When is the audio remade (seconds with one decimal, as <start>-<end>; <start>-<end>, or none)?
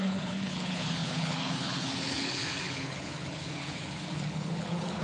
0.0-5.0